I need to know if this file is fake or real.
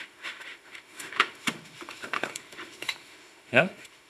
fake